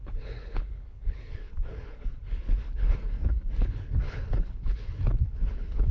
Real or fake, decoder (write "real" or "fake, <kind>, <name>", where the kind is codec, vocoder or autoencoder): fake, codec, HILCodec